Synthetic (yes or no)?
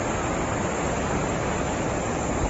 no